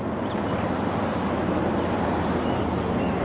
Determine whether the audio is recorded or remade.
recorded